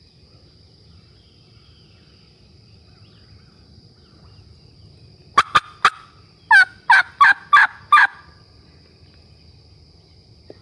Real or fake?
real